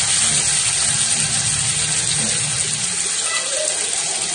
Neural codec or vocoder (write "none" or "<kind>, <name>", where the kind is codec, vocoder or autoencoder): none